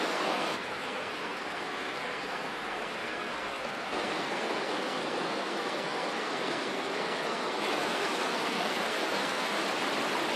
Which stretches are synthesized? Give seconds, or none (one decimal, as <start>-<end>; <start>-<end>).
0.0-9.6